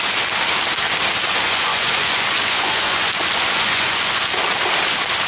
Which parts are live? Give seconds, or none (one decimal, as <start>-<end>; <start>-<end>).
0.0-1.3; 4.2-5.3